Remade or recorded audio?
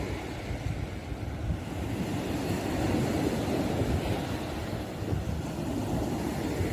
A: recorded